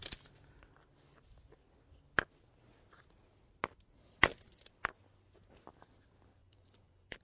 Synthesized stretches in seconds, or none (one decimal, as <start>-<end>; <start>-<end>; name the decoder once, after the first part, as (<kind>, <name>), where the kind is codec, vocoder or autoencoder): 6.4-7.2 (vocoder, Vocos)